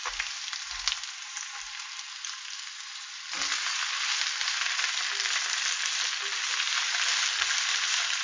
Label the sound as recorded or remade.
recorded